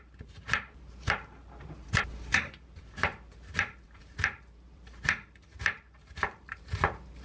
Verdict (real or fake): fake